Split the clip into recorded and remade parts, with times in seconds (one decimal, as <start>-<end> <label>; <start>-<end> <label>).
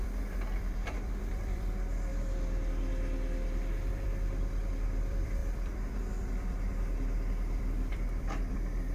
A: 0.0-2.1 remade; 2.1-3.9 recorded; 3.9-8.9 remade